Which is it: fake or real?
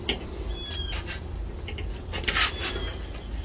real